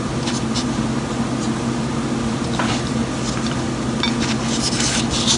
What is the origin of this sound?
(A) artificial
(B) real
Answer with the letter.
B